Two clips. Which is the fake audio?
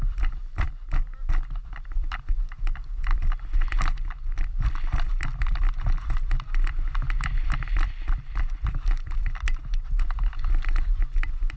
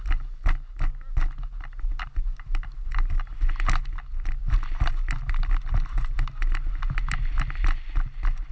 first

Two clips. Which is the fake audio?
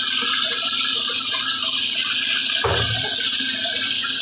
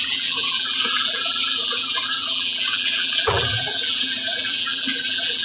second